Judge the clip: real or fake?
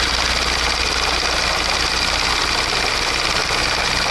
real